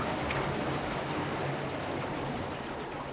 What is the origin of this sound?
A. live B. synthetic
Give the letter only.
A